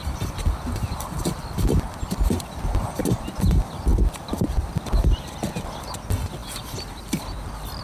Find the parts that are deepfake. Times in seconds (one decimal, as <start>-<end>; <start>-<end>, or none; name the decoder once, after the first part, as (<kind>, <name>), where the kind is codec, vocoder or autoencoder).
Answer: 0.0-3.0 (vocoder, BigVGAN v2); 6.4-7.2